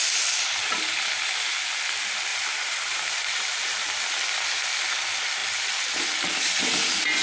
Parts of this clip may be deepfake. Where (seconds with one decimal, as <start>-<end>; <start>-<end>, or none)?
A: 0.0-0.6; 2.3-4.1; 5.4-6.1